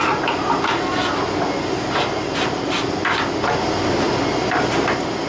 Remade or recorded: recorded